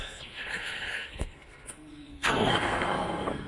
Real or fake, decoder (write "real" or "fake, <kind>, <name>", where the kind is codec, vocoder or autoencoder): fake, codec, SNAC